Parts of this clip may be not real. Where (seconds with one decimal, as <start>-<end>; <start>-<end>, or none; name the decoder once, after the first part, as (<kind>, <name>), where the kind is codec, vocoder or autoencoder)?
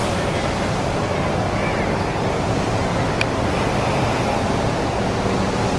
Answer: none